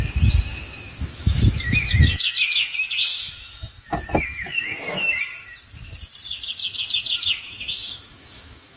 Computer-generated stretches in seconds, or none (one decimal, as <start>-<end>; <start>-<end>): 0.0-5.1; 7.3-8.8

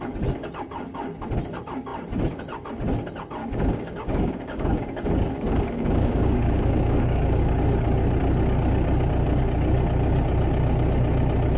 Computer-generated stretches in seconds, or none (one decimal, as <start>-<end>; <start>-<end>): 3.4-7.5

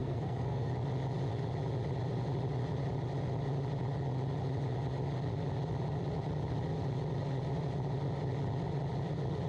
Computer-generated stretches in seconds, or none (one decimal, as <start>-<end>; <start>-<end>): 0.0-0.7

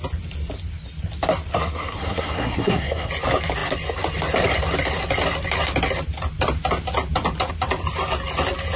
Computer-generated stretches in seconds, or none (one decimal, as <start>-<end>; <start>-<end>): 1.5-3.1